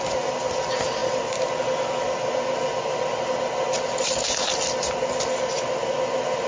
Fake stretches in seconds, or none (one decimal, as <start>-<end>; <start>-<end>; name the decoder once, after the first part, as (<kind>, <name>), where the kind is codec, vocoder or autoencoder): none

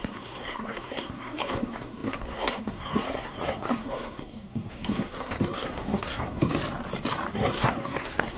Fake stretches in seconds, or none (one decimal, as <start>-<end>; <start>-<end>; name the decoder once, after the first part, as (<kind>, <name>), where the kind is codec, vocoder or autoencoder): 0.0-6.6 (codec, SNAC); 7.3-8.4

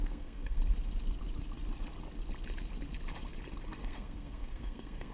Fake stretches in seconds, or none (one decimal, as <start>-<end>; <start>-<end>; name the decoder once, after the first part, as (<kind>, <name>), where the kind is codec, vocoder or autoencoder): 0.0-0.6 (codec, SNAC); 3.7-5.1

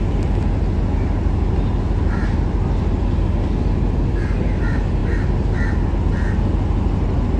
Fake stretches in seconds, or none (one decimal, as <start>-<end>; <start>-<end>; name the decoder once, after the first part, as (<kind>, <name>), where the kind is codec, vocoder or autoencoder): none

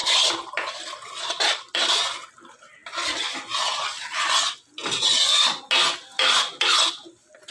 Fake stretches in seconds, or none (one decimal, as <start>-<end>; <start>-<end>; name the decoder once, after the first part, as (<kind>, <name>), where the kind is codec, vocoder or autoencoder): none

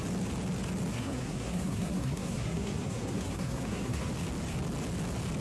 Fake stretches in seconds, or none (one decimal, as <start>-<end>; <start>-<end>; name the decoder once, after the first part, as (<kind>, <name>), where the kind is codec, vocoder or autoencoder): 0.9-4.1 (codec, SNAC)